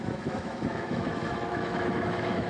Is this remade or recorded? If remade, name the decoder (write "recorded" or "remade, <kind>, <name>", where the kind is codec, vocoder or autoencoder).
remade, autoencoder, DAC-VAE